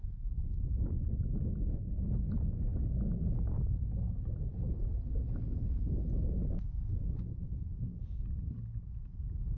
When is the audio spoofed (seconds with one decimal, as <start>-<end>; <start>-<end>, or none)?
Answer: none

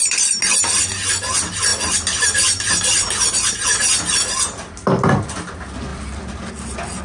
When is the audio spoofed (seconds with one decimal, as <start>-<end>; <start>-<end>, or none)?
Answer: 5.9-6.5